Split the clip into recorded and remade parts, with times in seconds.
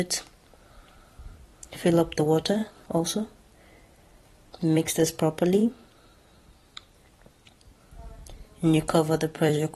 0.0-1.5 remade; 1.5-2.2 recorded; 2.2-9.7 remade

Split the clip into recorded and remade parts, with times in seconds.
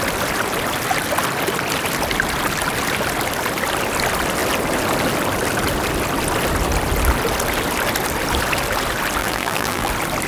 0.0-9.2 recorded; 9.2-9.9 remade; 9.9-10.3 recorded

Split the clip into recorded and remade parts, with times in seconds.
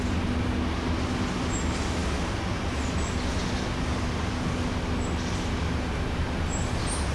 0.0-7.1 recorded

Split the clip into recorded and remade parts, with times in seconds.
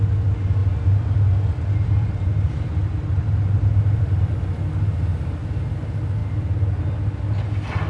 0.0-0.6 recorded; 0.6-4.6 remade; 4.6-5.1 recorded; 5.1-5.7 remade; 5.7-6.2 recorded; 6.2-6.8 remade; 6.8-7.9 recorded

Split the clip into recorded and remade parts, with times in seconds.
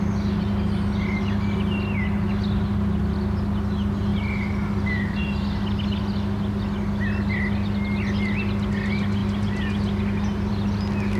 0.0-4.1 recorded; 4.1-5.2 remade; 5.2-9.2 recorded; 9.2-10.5 remade; 10.5-11.2 recorded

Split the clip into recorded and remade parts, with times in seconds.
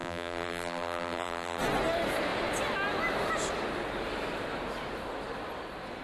0.0-1.6 remade; 1.6-6.0 recorded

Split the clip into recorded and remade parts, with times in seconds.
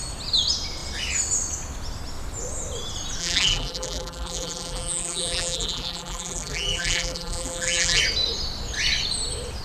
0.0-3.2 recorded; 3.2-8.0 remade; 8.0-9.6 recorded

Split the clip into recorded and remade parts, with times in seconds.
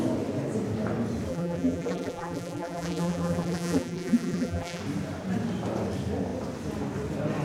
0.0-1.3 recorded; 1.3-4.8 remade; 4.8-7.4 recorded